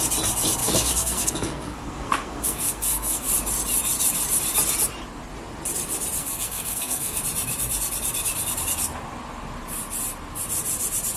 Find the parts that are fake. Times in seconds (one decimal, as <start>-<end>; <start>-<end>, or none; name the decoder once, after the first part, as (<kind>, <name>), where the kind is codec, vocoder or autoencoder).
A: 0.6-3.3 (codec, SNAC); 6.2-7.2